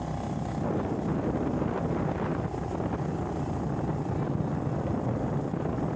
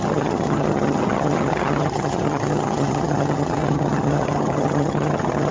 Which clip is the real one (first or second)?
first